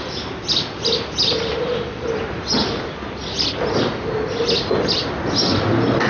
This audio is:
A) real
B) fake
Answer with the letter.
A